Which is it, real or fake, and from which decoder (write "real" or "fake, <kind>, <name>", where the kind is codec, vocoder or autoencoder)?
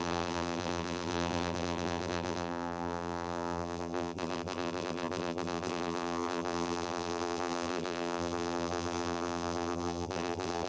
fake, vocoder, BigVGAN v2